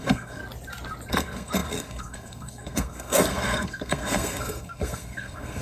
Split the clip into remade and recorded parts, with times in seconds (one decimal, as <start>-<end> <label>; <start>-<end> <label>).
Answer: 0.0-0.4 remade; 0.4-1.1 recorded; 1.1-5.6 remade